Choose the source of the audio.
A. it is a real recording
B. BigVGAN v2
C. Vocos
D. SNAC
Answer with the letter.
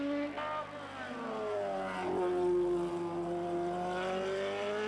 A